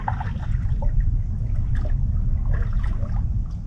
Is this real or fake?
real